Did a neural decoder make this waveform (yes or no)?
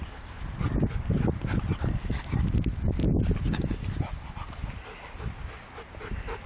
no